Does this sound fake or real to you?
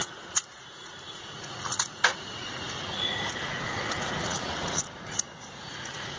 fake